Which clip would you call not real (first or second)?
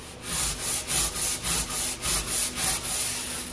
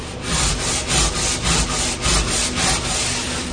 second